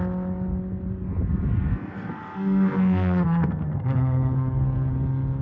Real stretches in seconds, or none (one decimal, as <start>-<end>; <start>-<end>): 0.0-1.7; 4.9-5.4